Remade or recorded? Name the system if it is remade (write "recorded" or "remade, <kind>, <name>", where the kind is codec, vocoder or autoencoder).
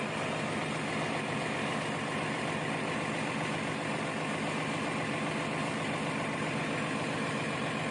recorded